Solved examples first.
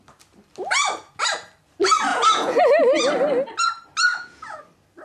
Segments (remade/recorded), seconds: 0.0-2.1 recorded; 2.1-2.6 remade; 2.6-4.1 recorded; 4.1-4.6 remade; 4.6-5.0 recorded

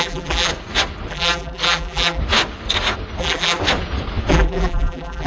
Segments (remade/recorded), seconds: 0.0-0.5 remade; 0.5-1.1 recorded; 1.1-2.2 remade; 2.2-3.2 recorded; 3.2-3.6 remade; 3.6-4.3 recorded; 4.3-5.3 remade

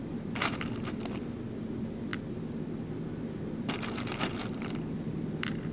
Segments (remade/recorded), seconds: 0.0-5.7 recorded

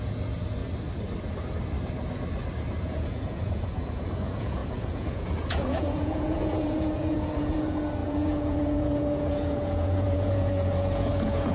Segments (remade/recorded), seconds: 0.0-0.6 remade; 0.6-2.8 recorded; 2.8-11.5 remade

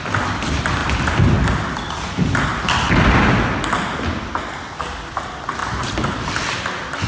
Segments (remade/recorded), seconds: 0.0-7.1 recorded

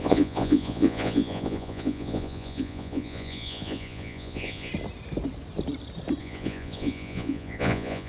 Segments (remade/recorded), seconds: 0.0-4.7 remade; 4.7-6.2 recorded; 6.2-8.1 remade

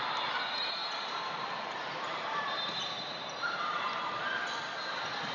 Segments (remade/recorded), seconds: 0.0-0.8 recorded; 0.8-4.0 remade; 4.0-5.3 recorded